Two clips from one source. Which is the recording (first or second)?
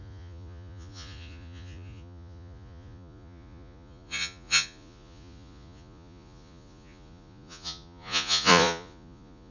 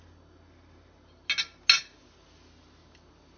second